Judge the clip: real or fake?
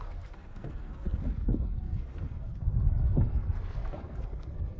fake